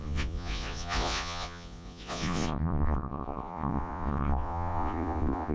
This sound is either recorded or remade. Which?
remade